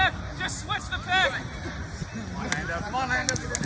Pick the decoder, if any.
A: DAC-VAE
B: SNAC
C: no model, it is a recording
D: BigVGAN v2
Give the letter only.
C